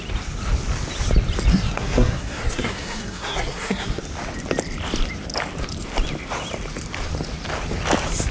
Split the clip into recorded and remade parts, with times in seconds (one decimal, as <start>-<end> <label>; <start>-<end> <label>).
0.0-1.5 recorded; 1.5-4.0 remade; 4.0-8.3 recorded